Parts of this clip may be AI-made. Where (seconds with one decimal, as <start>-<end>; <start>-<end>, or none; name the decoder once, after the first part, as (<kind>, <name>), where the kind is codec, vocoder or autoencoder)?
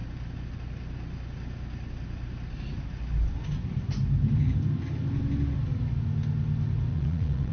6.9-7.5 (vocoder, Vocos)